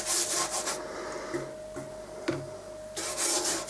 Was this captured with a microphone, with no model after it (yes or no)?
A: yes